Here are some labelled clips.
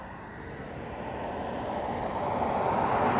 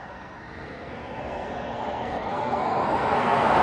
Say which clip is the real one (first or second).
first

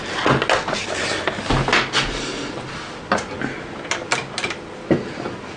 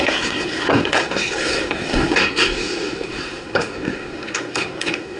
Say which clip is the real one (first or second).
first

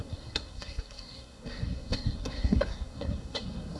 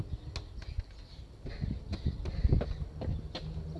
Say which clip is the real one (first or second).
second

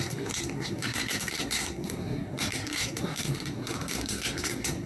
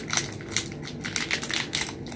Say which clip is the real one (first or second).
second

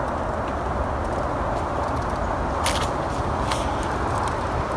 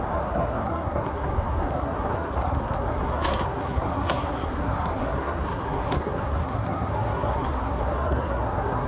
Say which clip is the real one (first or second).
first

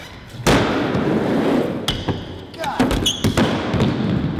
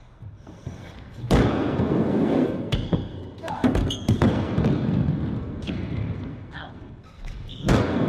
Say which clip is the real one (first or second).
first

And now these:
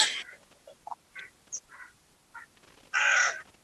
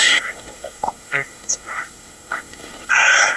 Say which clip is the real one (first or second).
first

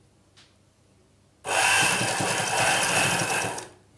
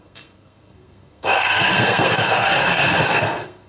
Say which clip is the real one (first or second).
first